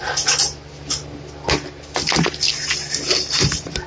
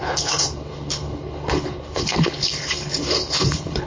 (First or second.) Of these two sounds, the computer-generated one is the second